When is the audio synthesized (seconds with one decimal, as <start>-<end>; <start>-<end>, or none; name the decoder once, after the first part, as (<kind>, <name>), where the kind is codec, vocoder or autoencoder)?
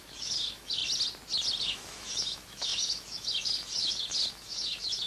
0.0-0.8 (autoencoder, DAC-VAE); 1.6-5.1